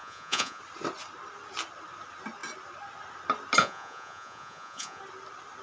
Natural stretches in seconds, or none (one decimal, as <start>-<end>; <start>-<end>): 0.6-3.6; 5.0-5.6